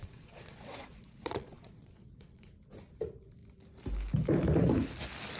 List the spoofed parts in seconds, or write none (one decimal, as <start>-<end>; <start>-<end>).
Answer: 0.0-2.5